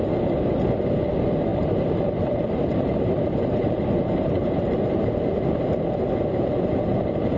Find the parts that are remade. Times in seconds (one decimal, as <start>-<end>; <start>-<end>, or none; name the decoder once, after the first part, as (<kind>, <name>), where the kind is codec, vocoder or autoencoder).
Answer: 1.5-5.0 (vocoder, BigVGAN v2)